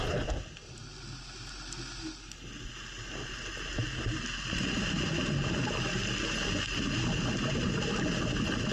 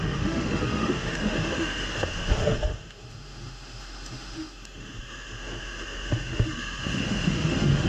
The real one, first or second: first